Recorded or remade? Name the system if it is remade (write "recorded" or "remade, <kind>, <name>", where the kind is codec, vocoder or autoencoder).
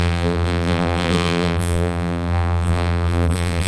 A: remade, vocoder, BigVGAN v2